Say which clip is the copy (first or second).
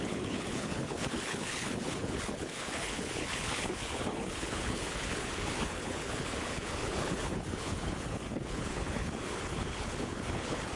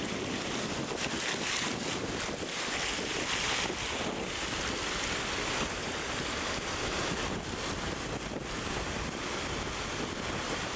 first